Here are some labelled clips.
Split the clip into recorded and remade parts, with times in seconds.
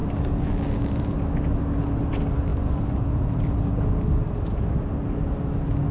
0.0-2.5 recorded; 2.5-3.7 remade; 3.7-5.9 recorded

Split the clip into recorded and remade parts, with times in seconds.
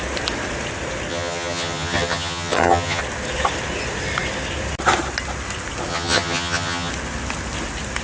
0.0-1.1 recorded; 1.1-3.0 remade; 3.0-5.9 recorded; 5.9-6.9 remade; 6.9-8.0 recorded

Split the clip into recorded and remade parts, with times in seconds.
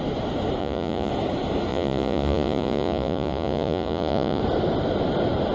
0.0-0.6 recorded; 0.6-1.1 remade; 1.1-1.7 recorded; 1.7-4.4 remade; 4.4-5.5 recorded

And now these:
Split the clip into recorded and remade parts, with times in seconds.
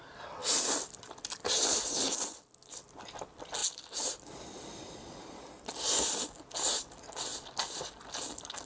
0.0-8.7 recorded